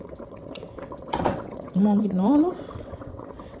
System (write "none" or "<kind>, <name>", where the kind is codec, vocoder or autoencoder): vocoder, WaveNeXt